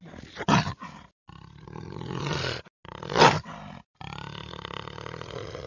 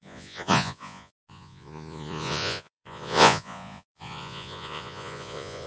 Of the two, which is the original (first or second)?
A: first